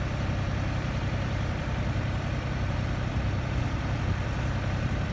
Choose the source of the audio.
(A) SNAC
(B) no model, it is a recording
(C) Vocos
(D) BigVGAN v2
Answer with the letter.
D